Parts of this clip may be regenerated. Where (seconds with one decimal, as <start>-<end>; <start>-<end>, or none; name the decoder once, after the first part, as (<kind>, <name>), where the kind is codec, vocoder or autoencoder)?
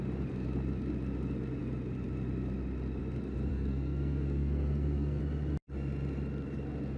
3.5-5.2 (codec, SNAC)